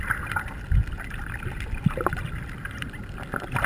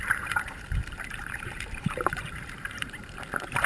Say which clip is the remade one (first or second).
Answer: second